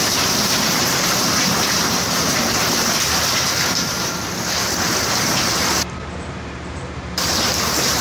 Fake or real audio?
fake